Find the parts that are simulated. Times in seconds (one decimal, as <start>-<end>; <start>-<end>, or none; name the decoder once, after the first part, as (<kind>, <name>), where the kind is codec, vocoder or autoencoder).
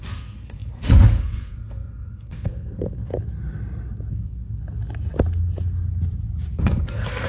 0.0-3.1 (codec, SNAC); 4.1-4.6; 6.6-7.3